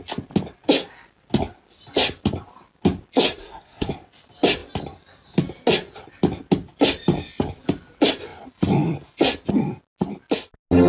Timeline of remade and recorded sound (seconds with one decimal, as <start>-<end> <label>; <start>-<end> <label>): 0.0-3.4 recorded; 3.4-3.9 remade; 3.9-10.9 recorded